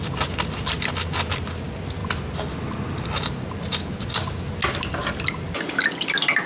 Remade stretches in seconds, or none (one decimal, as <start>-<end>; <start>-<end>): none